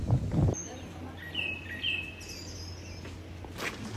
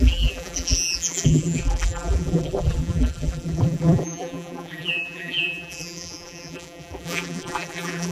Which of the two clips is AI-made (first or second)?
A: second